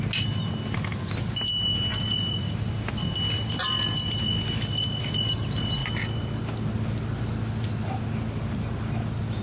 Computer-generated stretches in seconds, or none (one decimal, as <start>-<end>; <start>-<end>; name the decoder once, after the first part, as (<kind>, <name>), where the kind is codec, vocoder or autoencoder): none